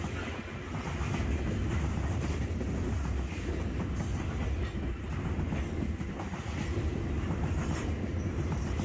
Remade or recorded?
recorded